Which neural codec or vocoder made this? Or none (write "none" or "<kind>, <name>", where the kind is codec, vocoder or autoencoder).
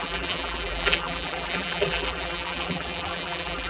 vocoder, BigVGAN v2